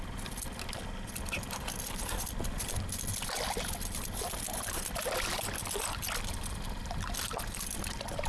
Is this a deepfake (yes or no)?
no